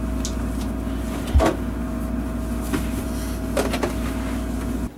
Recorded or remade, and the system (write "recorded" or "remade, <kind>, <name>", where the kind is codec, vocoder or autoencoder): recorded